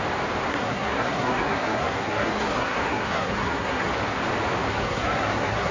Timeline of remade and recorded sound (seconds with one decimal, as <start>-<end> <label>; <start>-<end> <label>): 0.0-0.5 recorded; 0.5-3.9 remade; 3.9-4.7 recorded; 4.7-5.7 remade